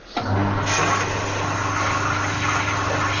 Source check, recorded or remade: recorded